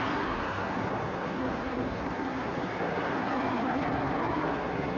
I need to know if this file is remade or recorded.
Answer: remade